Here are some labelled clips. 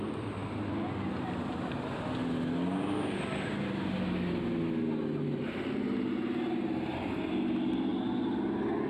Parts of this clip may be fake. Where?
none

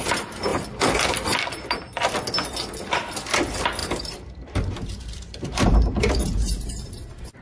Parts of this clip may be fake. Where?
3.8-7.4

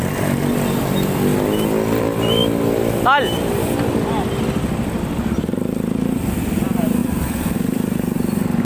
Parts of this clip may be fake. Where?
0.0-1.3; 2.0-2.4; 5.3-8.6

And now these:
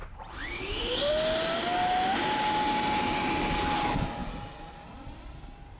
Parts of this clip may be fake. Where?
0.0-1.1

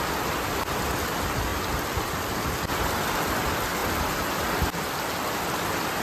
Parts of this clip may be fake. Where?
1.5-2.3; 3.8-4.5

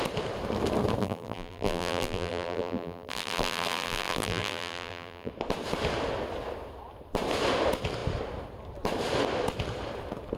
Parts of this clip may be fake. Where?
1.0-5.3

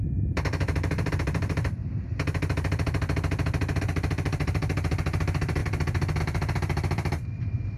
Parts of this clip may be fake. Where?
0.0-1.8; 3.8-5.6; 6.2-7.8

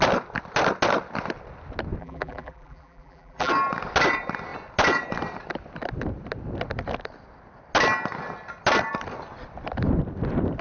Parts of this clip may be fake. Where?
2.0-3.5